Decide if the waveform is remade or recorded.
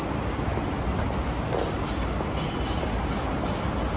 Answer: recorded